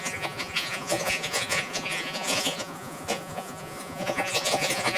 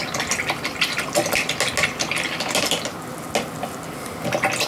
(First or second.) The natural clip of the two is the second